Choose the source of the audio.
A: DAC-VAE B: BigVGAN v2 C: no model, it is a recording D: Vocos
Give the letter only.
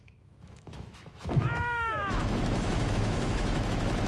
A